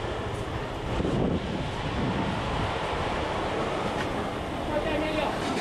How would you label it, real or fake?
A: fake